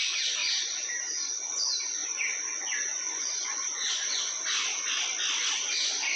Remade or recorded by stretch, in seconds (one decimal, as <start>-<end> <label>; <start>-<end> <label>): 0.0-0.4 recorded; 0.4-1.6 remade; 1.6-2.0 recorded; 2.0-4.2 remade; 4.2-6.2 recorded